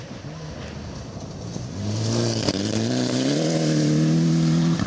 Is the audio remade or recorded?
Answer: recorded